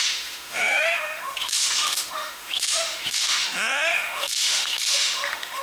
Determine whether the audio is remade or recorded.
remade